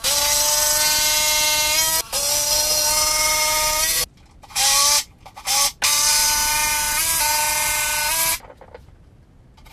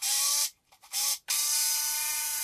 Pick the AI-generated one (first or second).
second